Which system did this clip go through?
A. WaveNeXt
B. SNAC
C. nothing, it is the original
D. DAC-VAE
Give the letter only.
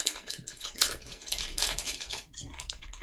B